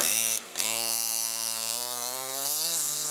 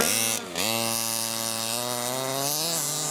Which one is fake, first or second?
first